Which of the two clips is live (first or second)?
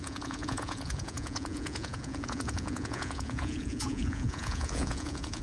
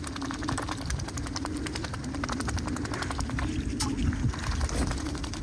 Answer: second